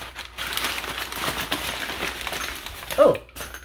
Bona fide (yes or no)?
yes